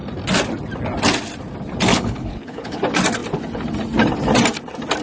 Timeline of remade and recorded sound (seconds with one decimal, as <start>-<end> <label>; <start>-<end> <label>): 0.0-1.9 recorded; 1.9-2.8 remade; 2.8-5.0 recorded